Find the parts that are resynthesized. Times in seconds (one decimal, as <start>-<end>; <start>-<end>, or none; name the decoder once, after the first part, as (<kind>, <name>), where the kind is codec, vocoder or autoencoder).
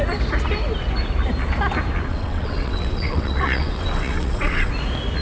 2.1-4.7 (vocoder, WaveNeXt)